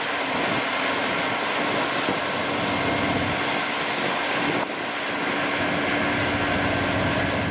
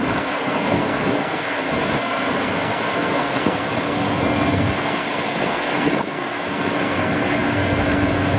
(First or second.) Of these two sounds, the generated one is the second